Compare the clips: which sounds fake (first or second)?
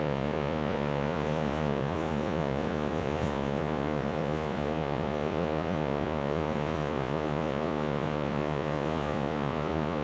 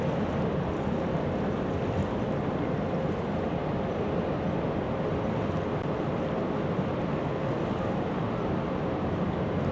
first